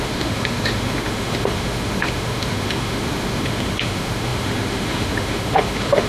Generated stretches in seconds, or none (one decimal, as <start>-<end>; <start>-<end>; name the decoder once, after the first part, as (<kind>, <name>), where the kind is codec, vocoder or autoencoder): 0.0-6.1 (autoencoder, DAC-VAE)